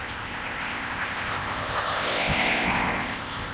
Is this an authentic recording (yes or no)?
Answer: no